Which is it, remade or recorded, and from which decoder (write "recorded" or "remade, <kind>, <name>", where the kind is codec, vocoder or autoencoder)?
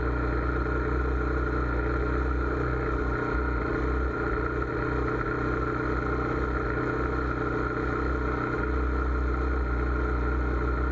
recorded